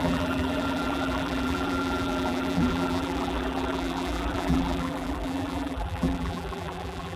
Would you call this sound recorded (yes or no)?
no